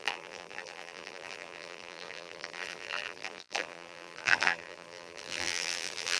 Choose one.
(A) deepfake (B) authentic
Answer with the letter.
A